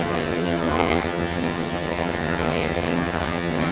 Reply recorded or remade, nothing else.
remade